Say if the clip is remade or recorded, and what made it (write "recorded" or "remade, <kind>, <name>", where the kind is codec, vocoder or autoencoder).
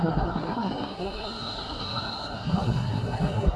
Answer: remade, codec, SNAC